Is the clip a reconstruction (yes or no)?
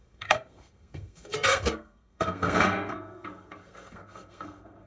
yes